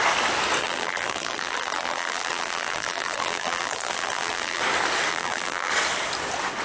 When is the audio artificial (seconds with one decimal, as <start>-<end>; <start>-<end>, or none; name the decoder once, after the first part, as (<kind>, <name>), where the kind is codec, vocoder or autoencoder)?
0.6-4.6 (vocoder, BigVGAN v2); 5.1-5.7